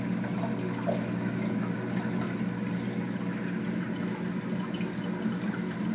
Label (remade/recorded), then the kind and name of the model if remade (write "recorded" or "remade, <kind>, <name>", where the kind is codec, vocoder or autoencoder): recorded